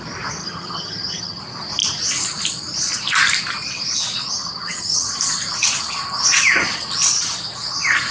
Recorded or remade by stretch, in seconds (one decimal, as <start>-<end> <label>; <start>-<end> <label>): 0.0-0.4 recorded; 0.4-1.4 remade; 1.4-4.3 recorded; 4.3-5.1 remade; 5.1-8.1 recorded